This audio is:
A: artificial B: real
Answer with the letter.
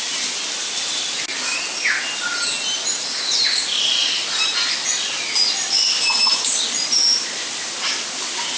B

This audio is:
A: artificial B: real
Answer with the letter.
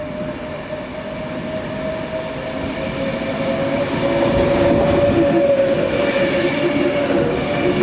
B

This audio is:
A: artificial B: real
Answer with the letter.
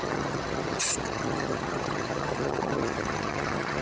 A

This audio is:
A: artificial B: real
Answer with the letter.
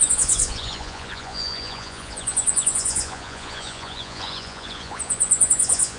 A